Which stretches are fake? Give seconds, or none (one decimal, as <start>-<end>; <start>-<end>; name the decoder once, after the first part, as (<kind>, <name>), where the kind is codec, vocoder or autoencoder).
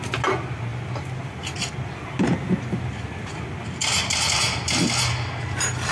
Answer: 0.7-2.7 (vocoder, BigVGAN v2)